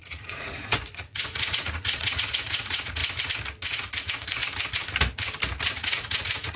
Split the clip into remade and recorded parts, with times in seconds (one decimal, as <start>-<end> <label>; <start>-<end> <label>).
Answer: 0.0-3.0 remade; 3.0-4.0 recorded; 4.0-4.4 remade; 4.4-5.7 recorded; 5.7-6.6 remade